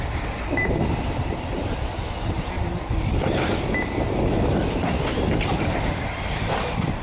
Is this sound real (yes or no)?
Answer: yes